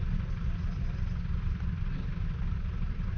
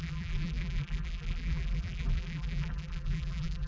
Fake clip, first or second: second